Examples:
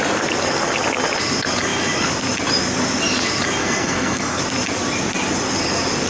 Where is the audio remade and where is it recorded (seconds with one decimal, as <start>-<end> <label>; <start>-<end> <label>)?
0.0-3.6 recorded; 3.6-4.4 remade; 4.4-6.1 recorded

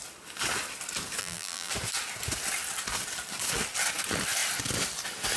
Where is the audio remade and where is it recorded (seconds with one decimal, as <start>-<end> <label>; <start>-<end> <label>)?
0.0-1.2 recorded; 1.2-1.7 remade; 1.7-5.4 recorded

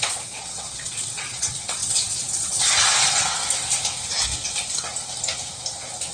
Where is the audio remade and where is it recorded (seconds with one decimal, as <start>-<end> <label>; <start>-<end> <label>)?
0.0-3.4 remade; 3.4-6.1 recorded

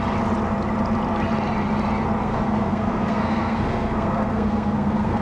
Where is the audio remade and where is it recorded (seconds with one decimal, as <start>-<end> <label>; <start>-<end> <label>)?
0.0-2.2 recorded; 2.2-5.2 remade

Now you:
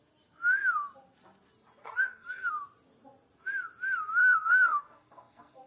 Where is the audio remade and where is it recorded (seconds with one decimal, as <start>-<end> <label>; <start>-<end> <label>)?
0.0-1.8 recorded; 1.8-2.5 remade; 2.5-4.2 recorded; 4.2-5.7 remade

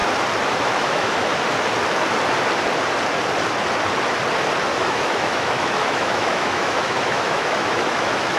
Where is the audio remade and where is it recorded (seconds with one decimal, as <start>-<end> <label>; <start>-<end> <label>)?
0.0-0.6 recorded; 0.6-1.3 remade; 1.3-4.8 recorded; 4.8-8.4 remade

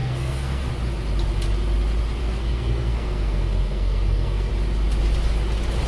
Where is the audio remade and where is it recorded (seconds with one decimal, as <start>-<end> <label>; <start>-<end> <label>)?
0.0-0.7 remade; 0.7-2.2 recorded; 2.2-4.5 remade; 4.5-5.9 recorded

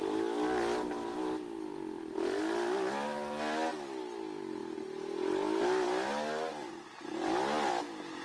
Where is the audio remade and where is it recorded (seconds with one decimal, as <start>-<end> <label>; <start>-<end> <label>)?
0.0-8.2 recorded